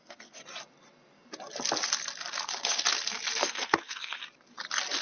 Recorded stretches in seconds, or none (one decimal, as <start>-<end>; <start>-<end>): 0.4-3.4; 4.2-5.0